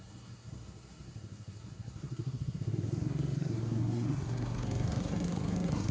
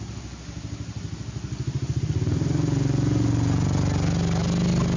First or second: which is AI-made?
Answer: first